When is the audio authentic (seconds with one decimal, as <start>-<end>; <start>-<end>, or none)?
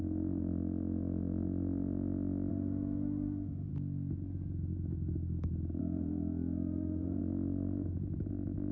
0.0-2.5; 3.7-5.8; 7.2-8.7